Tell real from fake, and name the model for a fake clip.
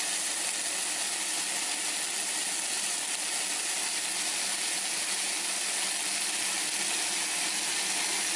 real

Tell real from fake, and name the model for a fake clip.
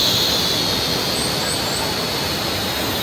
real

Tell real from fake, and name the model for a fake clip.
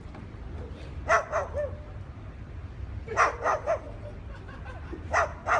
real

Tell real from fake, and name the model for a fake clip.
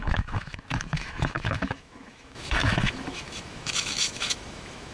fake, autoencoder, DAC-VAE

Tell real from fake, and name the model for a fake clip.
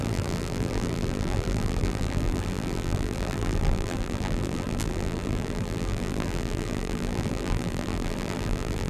fake, vocoder, BigVGAN v2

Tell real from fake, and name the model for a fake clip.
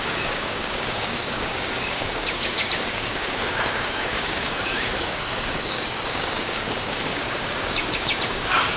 fake, codec, DAC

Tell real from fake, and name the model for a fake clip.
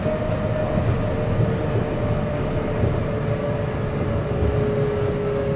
real